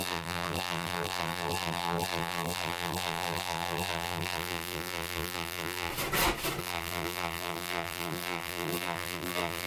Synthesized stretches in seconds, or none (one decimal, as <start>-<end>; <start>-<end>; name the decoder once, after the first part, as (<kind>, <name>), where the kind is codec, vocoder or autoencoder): 0.0-5.9 (vocoder, BigVGAN v2); 6.6-9.7